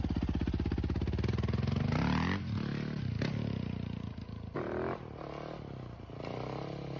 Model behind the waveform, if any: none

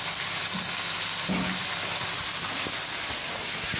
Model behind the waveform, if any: none